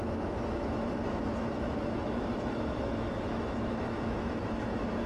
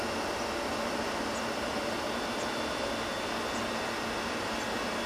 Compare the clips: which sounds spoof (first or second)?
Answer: first